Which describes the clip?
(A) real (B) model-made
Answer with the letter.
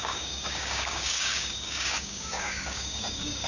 B